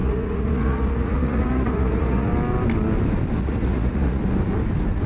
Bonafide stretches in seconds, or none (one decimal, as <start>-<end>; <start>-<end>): 2.3-3.4; 4.2-5.1